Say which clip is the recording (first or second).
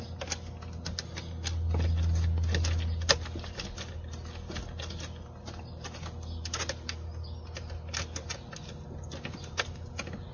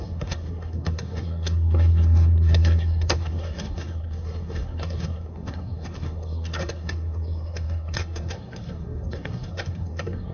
first